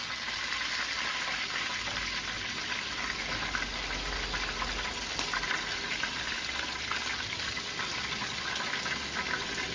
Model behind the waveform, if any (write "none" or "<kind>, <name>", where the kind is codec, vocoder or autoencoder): none